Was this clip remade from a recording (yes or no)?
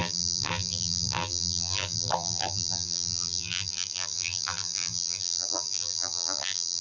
yes